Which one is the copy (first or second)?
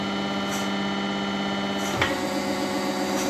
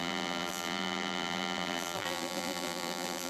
second